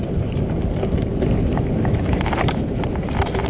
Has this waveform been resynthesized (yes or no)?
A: no